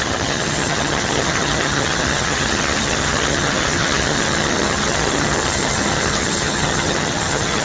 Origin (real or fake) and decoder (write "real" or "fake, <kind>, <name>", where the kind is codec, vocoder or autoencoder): fake, vocoder, HiFi-GAN